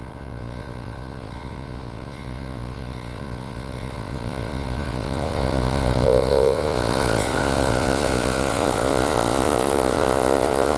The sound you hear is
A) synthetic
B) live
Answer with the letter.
A